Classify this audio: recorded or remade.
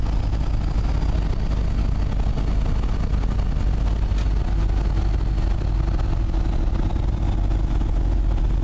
recorded